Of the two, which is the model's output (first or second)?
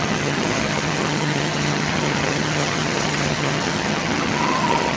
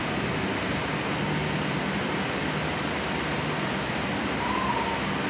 first